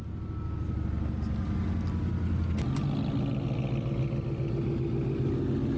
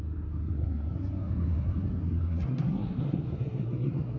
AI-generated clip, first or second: second